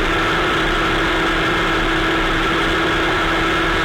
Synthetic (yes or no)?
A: no